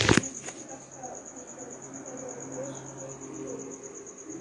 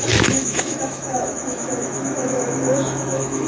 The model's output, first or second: second